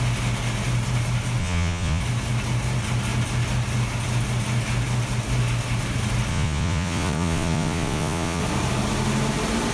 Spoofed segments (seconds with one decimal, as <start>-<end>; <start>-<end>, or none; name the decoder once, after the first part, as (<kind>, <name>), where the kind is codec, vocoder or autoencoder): 1.4-2.0 (vocoder, Vocos); 6.3-8.4